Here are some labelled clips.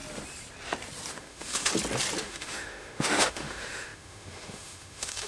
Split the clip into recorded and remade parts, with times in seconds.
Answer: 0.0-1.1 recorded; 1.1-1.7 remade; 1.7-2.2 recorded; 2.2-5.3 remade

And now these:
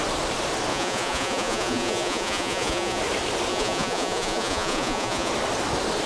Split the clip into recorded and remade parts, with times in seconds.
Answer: 0.0-0.7 recorded; 0.7-3.0 remade; 3.0-3.5 recorded; 3.5-5.3 remade; 5.3-6.1 recorded